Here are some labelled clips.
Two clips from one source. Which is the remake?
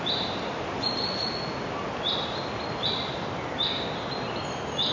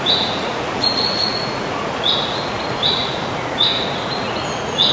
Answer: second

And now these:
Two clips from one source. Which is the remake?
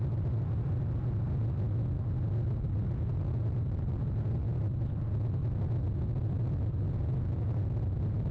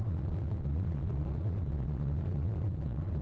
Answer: second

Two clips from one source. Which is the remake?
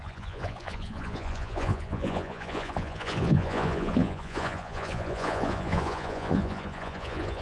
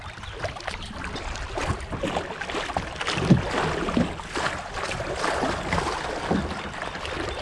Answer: first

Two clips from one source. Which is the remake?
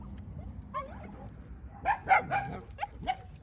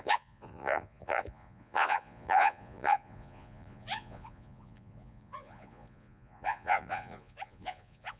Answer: second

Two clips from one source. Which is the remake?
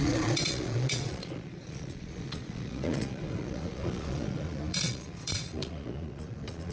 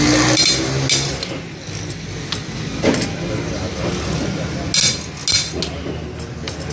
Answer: first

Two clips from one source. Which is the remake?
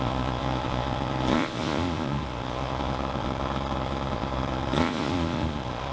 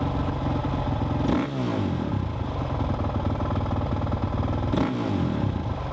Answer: first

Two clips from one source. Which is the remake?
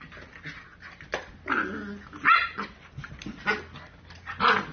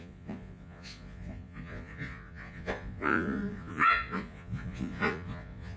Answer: second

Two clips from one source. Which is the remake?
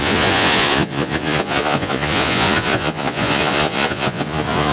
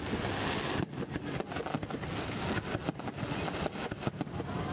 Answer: first